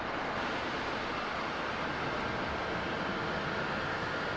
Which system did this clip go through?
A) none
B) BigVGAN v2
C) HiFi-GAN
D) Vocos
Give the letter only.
A